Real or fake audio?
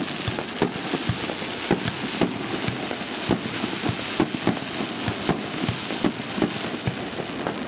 real